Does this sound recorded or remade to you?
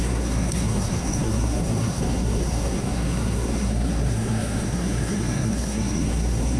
remade